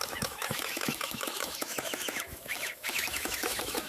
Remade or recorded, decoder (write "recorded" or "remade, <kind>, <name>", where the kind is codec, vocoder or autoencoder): remade, autoencoder, DAC-VAE